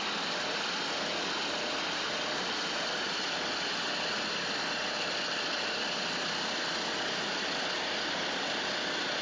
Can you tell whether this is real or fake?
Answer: real